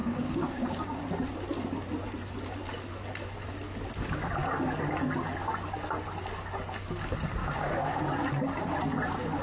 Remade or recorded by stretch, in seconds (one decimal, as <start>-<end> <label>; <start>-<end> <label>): 0.0-1.0 remade; 1.0-7.4 recorded; 7.4-8.0 remade; 8.0-9.4 recorded